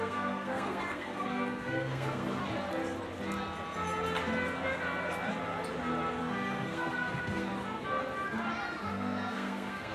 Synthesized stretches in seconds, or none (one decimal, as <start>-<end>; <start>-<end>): 0.0-2.4; 6.2-7.5; 8.9-9.9